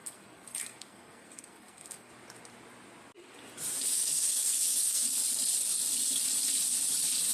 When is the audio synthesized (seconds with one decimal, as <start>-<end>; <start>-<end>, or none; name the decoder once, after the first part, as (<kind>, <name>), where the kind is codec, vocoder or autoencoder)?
0.0-2.1 (codec, SNAC); 3.8-5.2